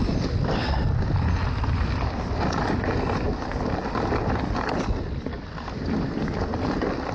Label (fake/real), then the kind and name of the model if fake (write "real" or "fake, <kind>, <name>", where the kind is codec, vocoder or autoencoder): real